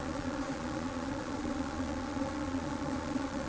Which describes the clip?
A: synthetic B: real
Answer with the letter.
A